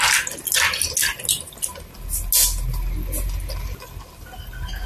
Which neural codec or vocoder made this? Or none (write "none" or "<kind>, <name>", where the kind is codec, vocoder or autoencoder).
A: none